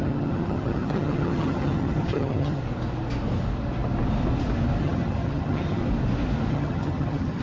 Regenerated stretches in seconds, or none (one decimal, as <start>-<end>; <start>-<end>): 0.0-2.6; 4.8-5.8; 6.5-7.4